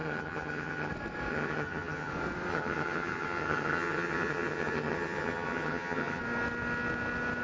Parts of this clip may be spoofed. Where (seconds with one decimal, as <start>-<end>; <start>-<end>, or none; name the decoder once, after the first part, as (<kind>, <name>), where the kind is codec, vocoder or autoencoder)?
0.0-0.9 (vocoder, HiFi-GAN); 1.3-2.1; 2.5-6.2